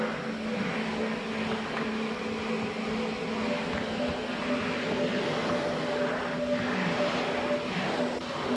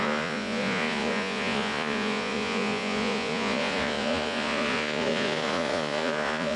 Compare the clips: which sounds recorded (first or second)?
first